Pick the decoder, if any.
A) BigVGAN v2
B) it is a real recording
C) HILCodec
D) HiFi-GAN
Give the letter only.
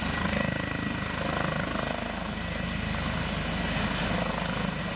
B